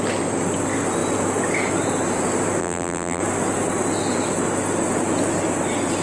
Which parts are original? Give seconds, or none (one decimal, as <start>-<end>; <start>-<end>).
0.0-2.6; 3.2-6.0